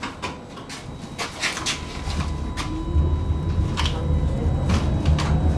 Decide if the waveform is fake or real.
real